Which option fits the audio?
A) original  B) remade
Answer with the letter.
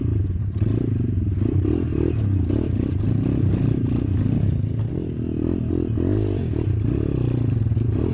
A